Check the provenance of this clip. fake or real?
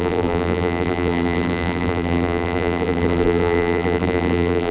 fake